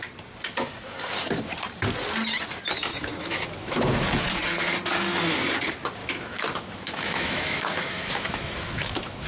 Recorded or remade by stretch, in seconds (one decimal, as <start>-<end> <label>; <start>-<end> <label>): 0.0-2.9 recorded; 2.9-4.0 remade; 4.0-6.0 recorded; 6.0-9.3 remade